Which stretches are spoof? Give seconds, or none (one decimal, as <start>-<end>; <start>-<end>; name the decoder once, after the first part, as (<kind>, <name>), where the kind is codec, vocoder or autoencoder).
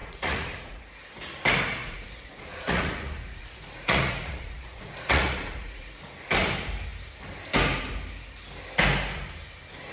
0.0-0.8 (vocoder, Vocos); 1.8-6.0